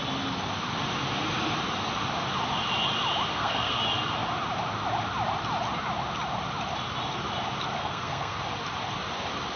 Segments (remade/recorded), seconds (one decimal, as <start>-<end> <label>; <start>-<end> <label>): 0.0-3.3 recorded; 3.3-3.8 remade; 3.8-7.8 recorded; 7.8-8.4 remade; 8.4-9.6 recorded